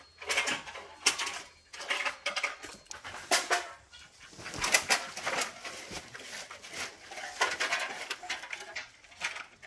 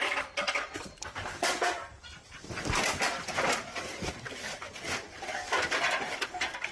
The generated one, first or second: second